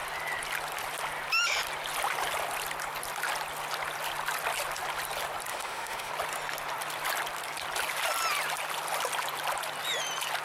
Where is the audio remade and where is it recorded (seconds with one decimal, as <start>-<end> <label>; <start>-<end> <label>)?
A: 0.0-5.5 recorded; 5.5-6.1 remade; 6.1-10.4 recorded